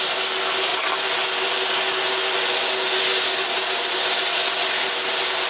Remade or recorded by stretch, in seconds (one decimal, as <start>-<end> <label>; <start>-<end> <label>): 0.0-5.5 recorded